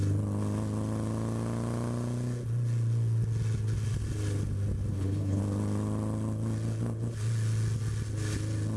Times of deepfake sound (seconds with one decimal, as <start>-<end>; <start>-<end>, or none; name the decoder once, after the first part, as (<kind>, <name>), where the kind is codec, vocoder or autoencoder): 4.9-5.4 (codec, HILCodec)